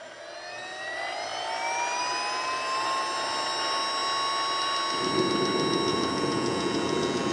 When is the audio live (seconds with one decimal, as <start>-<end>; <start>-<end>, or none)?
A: 0.0-5.9

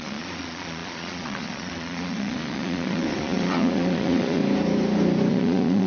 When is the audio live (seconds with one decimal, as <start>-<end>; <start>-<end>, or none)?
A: 4.4-5.3

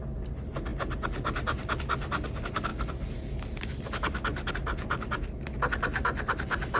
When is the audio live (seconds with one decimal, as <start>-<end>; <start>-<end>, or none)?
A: 0.0-6.8

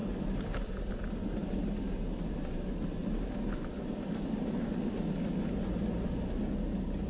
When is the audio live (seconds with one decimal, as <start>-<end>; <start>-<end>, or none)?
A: 0.0-7.1

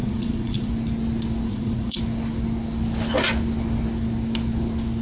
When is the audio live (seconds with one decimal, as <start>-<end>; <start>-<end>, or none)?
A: 0.7-1.5; 2.0-5.0